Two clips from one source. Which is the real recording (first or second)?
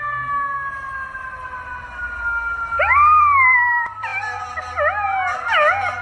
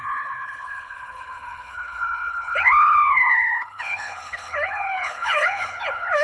first